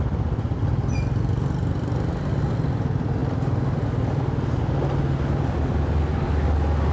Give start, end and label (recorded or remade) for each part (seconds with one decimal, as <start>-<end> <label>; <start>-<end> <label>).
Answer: 0.0-6.9 recorded